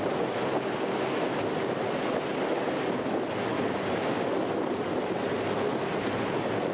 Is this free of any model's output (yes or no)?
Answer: yes